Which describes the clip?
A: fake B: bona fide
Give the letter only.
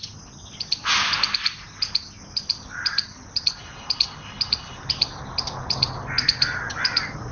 B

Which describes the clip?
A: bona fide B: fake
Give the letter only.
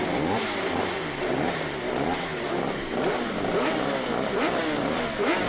A